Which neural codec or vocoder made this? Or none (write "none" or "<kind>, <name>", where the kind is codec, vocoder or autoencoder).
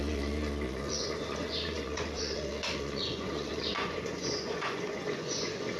vocoder, Vocos